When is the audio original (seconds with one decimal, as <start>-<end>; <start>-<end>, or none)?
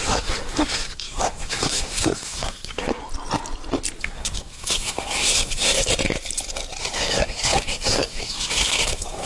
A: 3.0-4.0; 5.9-6.8